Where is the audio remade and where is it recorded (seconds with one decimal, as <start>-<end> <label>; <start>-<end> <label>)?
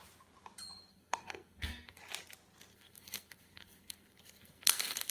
0.0-0.9 recorded; 0.9-2.0 remade; 2.0-2.7 recorded; 2.7-5.1 remade